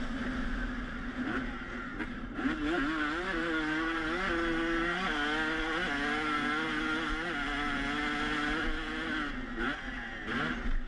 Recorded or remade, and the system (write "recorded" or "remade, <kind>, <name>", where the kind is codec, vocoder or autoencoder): recorded